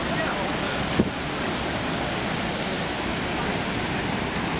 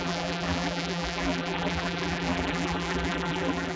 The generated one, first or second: second